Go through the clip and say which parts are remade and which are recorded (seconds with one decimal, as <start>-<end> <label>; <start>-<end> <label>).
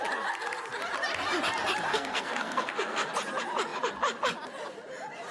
0.0-1.9 recorded; 1.9-3.1 remade; 3.1-5.3 recorded